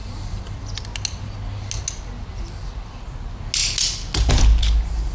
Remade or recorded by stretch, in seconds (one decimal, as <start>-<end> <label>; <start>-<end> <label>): 0.0-5.1 recorded